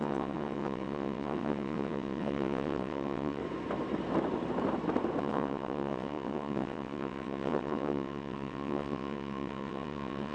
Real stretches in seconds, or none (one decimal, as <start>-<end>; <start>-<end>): 3.4-5.2